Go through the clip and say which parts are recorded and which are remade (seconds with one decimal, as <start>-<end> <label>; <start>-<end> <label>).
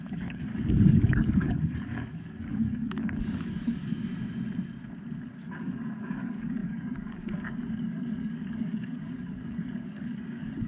0.0-4.1 remade; 4.1-5.3 recorded; 5.3-10.7 remade